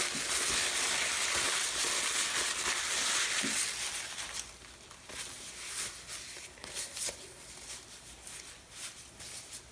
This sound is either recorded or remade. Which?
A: recorded